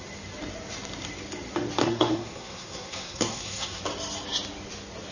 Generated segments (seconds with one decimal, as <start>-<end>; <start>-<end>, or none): 1.8-3.8